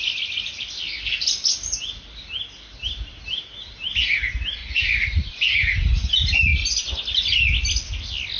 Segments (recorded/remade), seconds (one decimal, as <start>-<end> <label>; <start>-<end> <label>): 0.0-4.6 recorded; 4.6-5.3 remade; 5.3-8.4 recorded